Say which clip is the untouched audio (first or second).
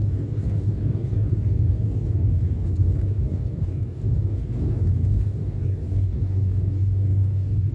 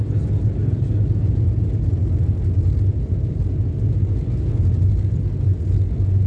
second